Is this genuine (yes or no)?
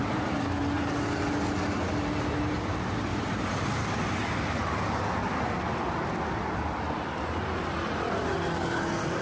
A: yes